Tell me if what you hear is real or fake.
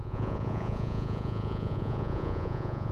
fake